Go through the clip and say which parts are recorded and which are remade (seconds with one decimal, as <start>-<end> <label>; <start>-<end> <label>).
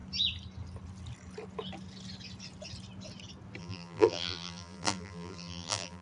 0.0-3.6 recorded; 3.6-6.0 remade